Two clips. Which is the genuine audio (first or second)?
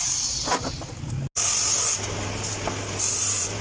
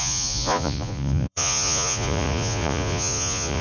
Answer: first